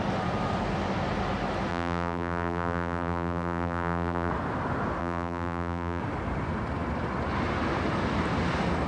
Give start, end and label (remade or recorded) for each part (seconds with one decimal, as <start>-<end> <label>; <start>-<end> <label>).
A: 0.0-1.7 recorded; 1.7-4.3 remade; 4.3-5.0 recorded; 5.0-6.0 remade; 6.0-8.9 recorded